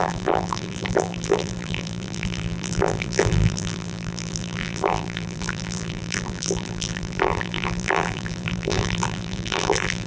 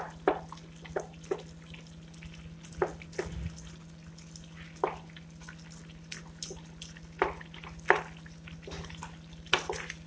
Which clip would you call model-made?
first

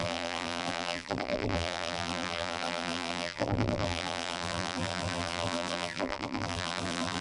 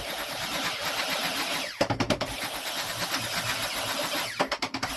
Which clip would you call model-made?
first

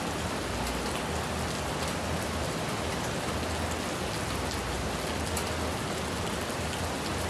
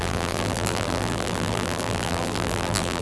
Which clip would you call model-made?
second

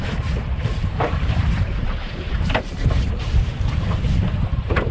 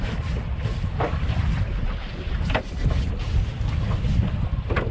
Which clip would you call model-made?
first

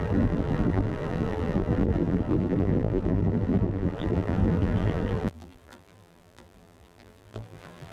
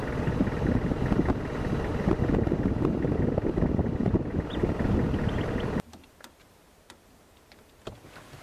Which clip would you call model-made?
first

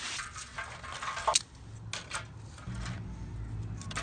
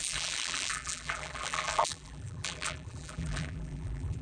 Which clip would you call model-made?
second